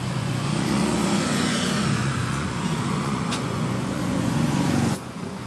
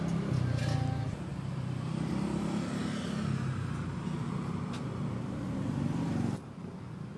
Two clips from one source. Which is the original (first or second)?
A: second